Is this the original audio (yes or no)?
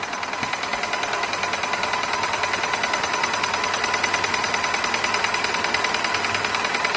yes